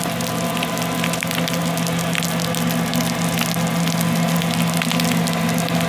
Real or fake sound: real